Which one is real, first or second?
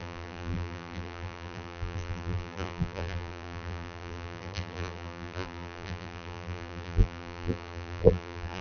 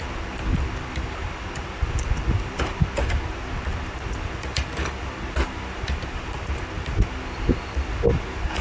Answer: second